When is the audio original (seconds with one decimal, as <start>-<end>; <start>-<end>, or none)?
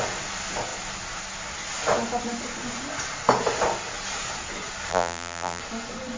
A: 0.0-4.9; 5.6-6.2